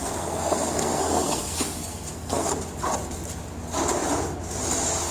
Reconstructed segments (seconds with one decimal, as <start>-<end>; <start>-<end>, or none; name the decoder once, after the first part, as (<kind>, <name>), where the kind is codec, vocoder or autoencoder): 0.0-2.5 (codec, SNAC)